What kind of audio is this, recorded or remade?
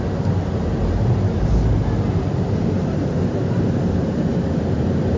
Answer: remade